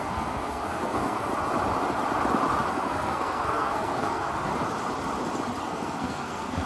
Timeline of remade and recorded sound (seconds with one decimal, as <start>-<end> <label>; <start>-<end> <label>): 0.0-1.3 remade; 1.3-2.7 recorded; 2.7-4.5 remade; 4.5-5.6 recorded; 5.6-6.7 remade

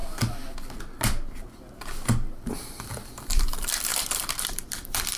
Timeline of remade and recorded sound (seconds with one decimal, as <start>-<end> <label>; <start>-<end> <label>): 0.0-2.5 recorded; 2.5-5.2 remade

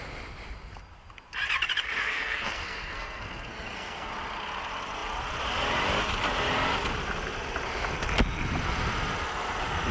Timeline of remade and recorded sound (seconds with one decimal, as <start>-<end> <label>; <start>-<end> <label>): 0.0-2.0 recorded; 2.0-4.1 remade; 4.1-9.9 recorded

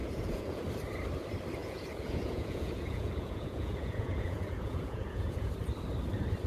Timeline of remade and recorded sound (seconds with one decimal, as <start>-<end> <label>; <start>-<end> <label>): 0.0-0.6 remade; 0.6-1.6 recorded; 1.6-5.5 remade; 5.5-6.5 recorded